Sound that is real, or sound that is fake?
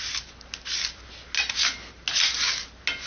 real